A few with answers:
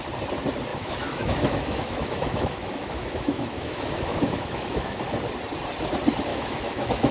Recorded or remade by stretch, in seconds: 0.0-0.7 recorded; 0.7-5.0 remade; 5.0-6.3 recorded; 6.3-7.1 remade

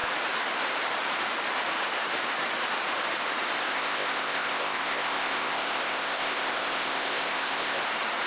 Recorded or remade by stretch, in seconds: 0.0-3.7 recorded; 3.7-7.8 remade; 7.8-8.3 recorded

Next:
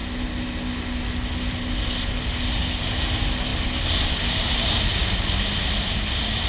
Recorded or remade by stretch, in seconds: 0.0-6.5 recorded

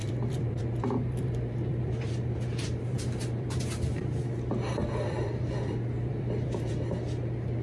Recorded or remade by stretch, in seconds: 0.0-3.6 remade; 3.6-4.7 recorded; 4.7-6.7 remade; 6.7-7.6 recorded

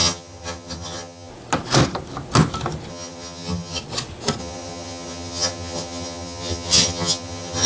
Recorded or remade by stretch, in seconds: 0.0-1.3 remade; 1.3-2.9 recorded; 2.9-3.8 remade; 3.8-4.4 recorded; 4.4-7.7 remade

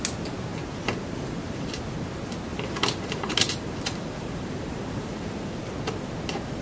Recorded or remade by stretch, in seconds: 0.0-0.5 recorded; 0.5-1.8 remade; 1.8-2.5 recorded; 2.5-5.5 remade; 5.5-6.6 recorded

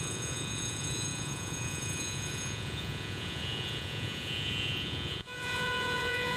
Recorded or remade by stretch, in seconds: 0.0-6.4 remade